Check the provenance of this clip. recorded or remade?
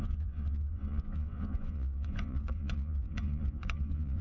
remade